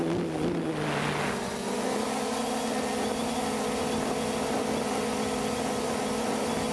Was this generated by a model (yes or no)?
no